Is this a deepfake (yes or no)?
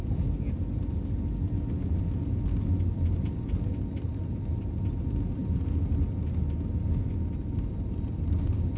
no